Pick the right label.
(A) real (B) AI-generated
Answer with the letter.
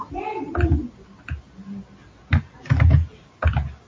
A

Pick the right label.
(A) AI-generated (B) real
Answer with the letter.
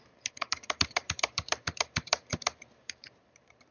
A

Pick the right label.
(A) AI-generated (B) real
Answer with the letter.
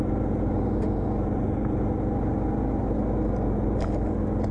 B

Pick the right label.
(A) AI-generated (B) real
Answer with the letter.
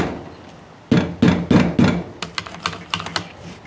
B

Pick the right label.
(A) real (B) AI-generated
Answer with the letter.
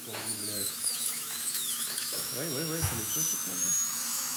B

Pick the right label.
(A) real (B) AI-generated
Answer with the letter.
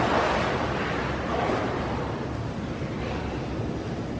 A